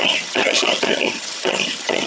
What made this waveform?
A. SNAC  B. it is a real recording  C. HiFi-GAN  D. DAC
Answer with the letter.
C